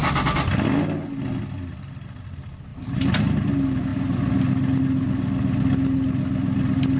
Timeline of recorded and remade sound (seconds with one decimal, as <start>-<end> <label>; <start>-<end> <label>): 0.0-2.7 recorded; 2.7-3.3 remade; 3.3-7.0 recorded